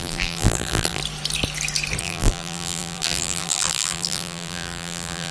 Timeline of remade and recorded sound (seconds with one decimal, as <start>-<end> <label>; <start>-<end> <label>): 0.0-1.0 remade; 1.0-2.0 recorded; 2.0-5.3 remade